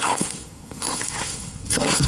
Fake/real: fake